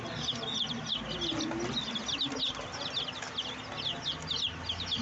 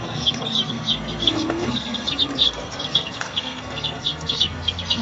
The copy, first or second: second